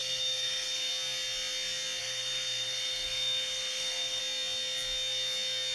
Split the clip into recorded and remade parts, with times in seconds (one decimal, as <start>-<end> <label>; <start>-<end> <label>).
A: 0.0-0.9 remade; 0.9-2.0 recorded; 2.0-4.2 remade; 4.2-5.7 recorded